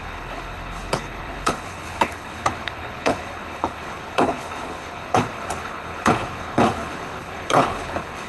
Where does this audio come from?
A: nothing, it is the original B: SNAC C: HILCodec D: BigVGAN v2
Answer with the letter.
C